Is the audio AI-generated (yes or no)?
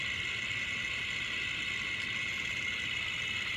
no